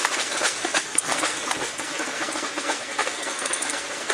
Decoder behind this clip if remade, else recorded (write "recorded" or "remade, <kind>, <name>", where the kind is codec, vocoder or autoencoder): remade, codec, SNAC